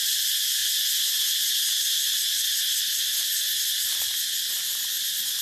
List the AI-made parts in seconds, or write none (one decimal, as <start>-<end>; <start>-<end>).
none